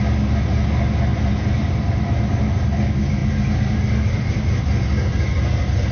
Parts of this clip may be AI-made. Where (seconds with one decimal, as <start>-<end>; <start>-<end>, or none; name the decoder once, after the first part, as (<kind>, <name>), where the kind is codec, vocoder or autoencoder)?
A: 1.1-1.7 (vocoder, BigVGAN v2)